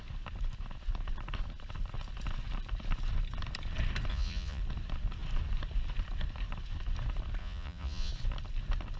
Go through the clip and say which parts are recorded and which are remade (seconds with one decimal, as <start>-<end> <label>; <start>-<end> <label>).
0.0-4.1 recorded; 4.1-4.6 remade; 4.6-7.4 recorded; 7.4-8.1 remade; 8.1-9.0 recorded